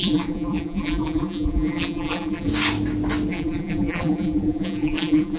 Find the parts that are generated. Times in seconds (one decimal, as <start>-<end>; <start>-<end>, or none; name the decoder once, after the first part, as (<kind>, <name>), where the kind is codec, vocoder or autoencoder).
0.0-2.5 (vocoder, BigVGAN v2); 3.3-5.4